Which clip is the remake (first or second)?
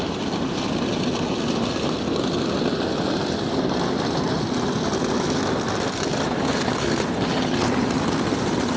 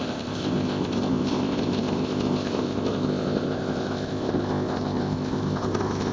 second